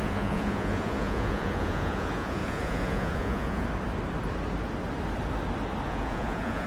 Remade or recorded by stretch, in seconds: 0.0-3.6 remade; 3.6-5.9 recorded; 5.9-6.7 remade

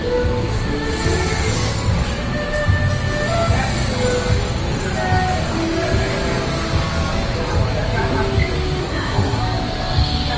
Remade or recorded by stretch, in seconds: 0.0-8.8 recorded; 8.8-9.4 remade; 9.4-10.4 recorded

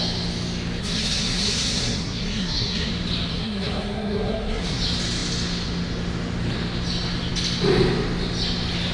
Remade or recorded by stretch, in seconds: 0.0-0.8 recorded; 0.8-2.9 remade; 2.9-3.3 recorded; 3.3-4.8 remade; 4.8-8.9 recorded

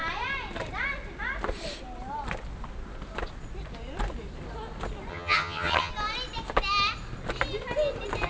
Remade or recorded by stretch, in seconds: 0.0-5.1 recorded; 5.1-5.9 remade; 5.9-8.3 recorded

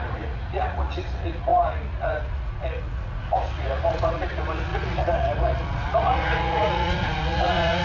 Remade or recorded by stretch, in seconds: 0.0-7.8 remade

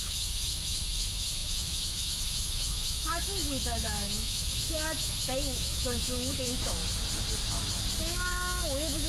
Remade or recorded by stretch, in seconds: 0.0-6.8 remade; 6.8-8.0 recorded; 8.0-9.1 remade

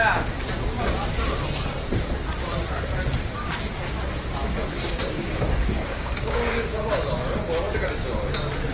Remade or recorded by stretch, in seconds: 0.0-4.8 recorded; 4.8-6.8 remade; 6.8-8.7 recorded

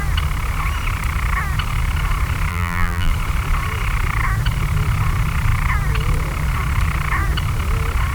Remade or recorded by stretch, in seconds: 0.0-2.5 recorded; 2.5-3.1 remade; 3.1-8.1 recorded